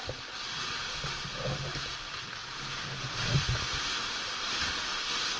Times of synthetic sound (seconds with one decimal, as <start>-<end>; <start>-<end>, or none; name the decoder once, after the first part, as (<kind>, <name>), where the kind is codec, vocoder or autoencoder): 2.4-3.1 (vocoder, Vocos)